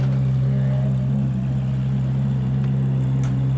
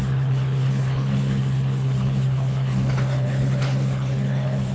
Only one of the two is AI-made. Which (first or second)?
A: second